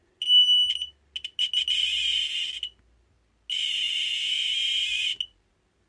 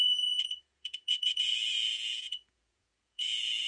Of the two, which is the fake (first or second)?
second